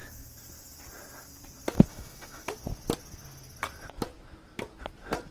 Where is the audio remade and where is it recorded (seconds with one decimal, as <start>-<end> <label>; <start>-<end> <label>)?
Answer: 0.0-1.9 recorded; 1.9-2.5 remade; 2.5-5.3 recorded